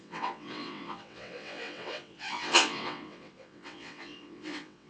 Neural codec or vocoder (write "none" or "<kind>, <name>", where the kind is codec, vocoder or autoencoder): vocoder, WaveNeXt